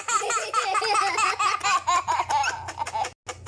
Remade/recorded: recorded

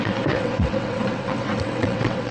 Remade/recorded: remade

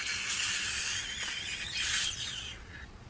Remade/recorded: remade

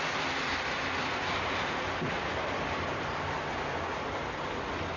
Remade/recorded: recorded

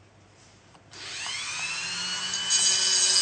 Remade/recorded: recorded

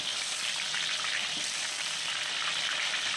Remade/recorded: recorded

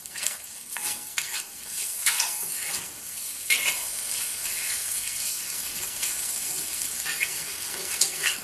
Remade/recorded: remade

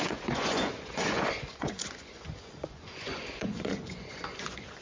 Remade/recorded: remade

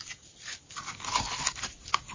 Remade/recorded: recorded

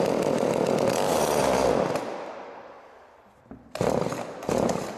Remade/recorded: recorded